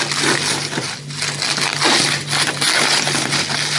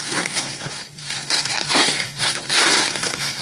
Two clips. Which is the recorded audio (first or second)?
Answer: first